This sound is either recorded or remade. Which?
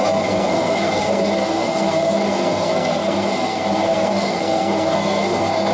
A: remade